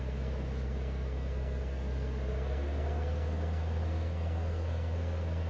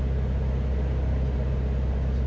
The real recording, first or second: second